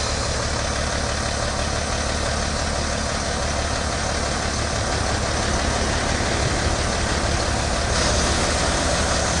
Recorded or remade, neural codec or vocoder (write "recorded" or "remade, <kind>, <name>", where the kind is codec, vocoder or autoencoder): recorded